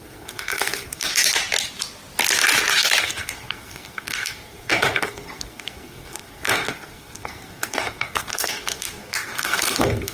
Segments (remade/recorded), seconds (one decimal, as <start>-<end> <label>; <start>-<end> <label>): 0.0-1.1 remade; 1.1-3.0 recorded; 3.0-10.1 remade